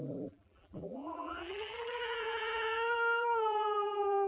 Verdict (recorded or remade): remade